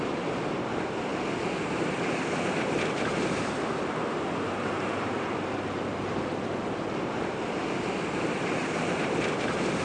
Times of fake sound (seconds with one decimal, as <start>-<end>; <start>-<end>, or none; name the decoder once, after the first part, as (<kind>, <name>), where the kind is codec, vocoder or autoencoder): 0.0-9.8 (vocoder, BigVGAN v2)